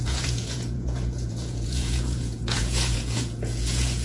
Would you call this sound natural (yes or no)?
no